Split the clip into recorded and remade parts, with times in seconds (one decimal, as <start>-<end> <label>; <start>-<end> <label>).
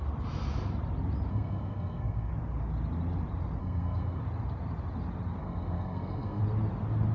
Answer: 0.0-1.3 recorded; 1.3-2.3 remade; 2.3-3.6 recorded; 3.6-4.2 remade; 4.2-5.4 recorded; 5.4-6.4 remade; 6.4-7.1 recorded